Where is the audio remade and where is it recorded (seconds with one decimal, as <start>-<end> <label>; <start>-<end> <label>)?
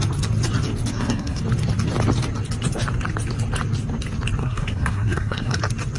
0.0-0.9 recorded; 0.9-1.4 remade; 1.4-4.4 recorded; 4.4-5.6 remade; 5.6-6.0 recorded